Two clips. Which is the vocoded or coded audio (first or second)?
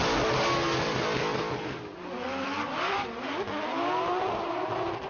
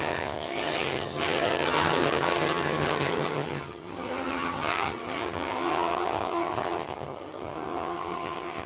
second